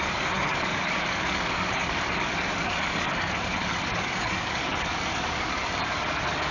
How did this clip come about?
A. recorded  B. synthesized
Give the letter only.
B